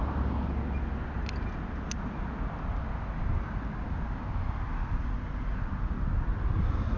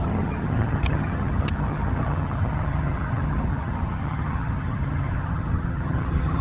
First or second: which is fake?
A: second